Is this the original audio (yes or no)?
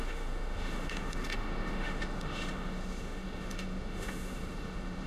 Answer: no